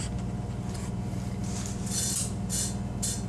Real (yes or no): yes